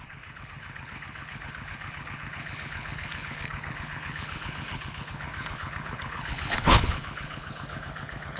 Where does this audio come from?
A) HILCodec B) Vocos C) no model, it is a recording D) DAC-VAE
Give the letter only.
A